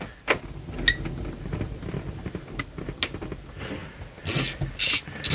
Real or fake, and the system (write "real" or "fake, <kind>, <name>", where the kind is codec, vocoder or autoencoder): real